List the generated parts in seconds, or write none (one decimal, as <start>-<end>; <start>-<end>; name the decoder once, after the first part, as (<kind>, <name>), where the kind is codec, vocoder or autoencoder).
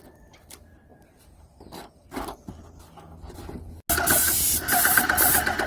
0.9-2.5 (vocoder, BigVGAN v2)